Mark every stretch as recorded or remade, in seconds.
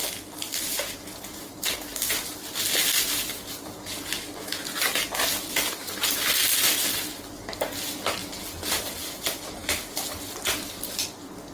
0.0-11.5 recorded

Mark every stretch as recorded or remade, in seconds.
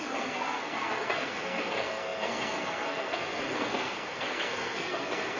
0.0-5.4 remade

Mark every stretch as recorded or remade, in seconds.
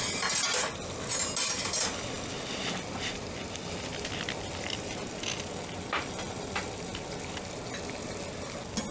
0.0-8.9 recorded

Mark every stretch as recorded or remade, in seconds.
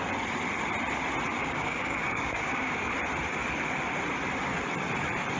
0.0-1.4 recorded; 1.4-2.9 remade; 2.9-5.4 recorded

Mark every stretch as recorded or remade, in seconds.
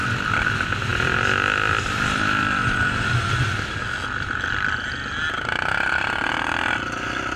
0.0-0.9 recorded; 0.9-2.8 remade; 2.8-7.4 recorded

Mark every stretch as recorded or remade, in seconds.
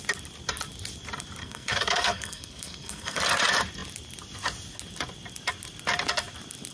0.0-1.4 recorded; 1.4-3.2 remade; 3.2-6.7 recorded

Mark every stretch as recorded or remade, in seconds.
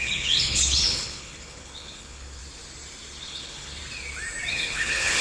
0.0-2.4 remade; 2.4-3.2 recorded; 3.2-3.8 remade; 3.8-4.5 recorded; 4.5-5.2 remade